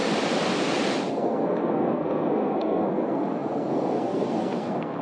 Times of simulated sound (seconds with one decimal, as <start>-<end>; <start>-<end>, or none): 1.1-5.0

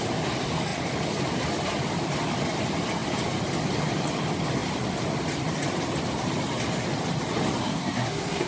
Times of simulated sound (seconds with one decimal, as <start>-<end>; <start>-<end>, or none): 7.6-8.5

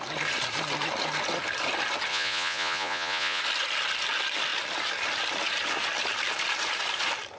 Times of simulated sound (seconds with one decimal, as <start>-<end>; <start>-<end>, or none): 2.1-3.4

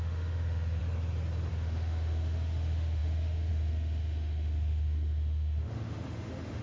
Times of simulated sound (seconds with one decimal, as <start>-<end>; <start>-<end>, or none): 0.0-0.8; 1.5-6.6

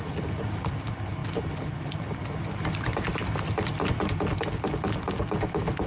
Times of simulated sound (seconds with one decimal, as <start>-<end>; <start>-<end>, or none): none